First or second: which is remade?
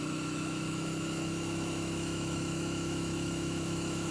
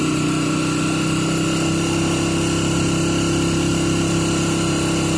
first